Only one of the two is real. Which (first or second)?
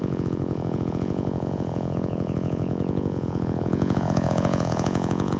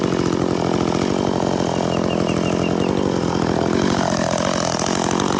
second